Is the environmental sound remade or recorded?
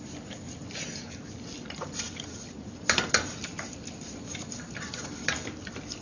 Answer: remade